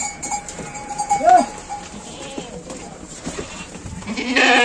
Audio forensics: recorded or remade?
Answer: remade